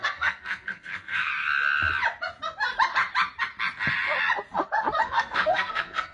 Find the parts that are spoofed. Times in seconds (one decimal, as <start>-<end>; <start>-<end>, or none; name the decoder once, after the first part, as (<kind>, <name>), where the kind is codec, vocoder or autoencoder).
0.0-1.3 (codec, SNAC); 5.0-6.1